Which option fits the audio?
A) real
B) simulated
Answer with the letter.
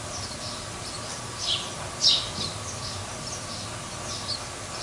A